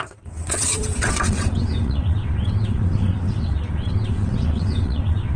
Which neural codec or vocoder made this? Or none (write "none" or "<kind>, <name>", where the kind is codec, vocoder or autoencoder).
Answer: vocoder, WaveNeXt